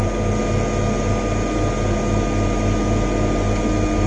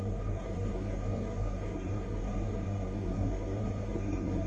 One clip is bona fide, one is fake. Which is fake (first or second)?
second